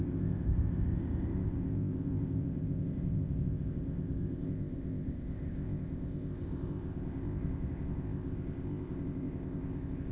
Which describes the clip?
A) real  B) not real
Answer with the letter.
B